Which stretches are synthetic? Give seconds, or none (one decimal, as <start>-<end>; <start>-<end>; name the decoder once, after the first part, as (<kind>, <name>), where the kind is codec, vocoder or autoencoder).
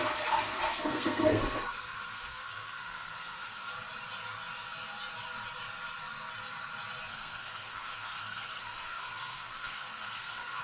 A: 0.7-3.7 (codec, SNAC); 7.1-10.6